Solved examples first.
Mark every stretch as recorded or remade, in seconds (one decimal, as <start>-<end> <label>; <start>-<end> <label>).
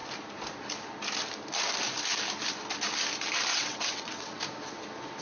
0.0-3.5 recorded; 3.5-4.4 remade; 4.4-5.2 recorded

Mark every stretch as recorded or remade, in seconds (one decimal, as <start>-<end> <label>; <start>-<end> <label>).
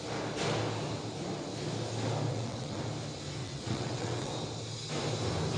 0.0-2.3 recorded; 2.3-2.8 remade; 2.8-3.4 recorded; 3.4-4.3 remade; 4.3-5.6 recorded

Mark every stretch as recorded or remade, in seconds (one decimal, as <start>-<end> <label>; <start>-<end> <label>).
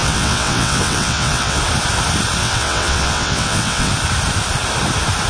0.0-1.6 remade; 1.6-2.4 recorded; 2.4-3.9 remade; 3.9-5.3 recorded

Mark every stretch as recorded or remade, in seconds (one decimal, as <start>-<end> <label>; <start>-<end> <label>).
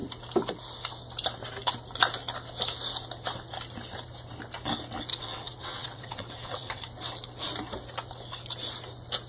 0.0-5.1 recorded; 5.1-6.8 remade; 6.8-9.3 recorded